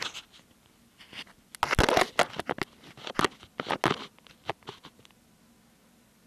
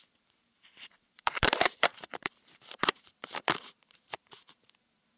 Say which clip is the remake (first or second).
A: second